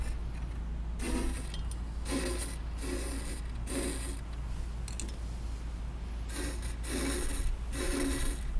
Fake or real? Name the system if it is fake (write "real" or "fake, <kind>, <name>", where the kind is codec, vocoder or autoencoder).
real